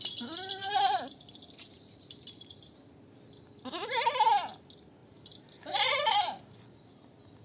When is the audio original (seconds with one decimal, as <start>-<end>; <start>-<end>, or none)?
0.0-0.6; 1.2-1.6; 2.8-5.0; 6.8-7.4